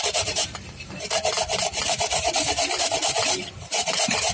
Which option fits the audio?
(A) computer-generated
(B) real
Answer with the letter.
A